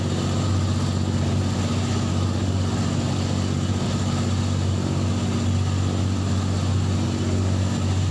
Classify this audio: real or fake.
real